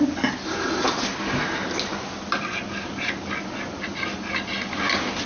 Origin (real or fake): real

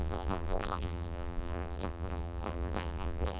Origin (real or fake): fake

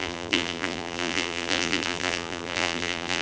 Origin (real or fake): fake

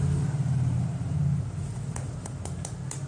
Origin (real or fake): real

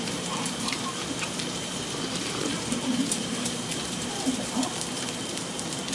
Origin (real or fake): fake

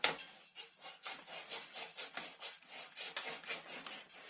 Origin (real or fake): real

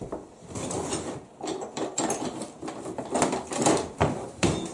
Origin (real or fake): real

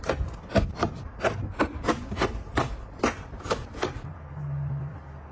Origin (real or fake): fake